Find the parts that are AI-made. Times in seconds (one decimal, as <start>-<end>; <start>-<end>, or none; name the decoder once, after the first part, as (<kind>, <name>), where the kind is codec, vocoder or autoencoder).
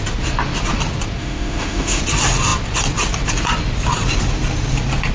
1.2-2.0 (autoencoder, DAC-VAE)